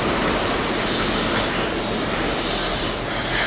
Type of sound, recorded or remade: recorded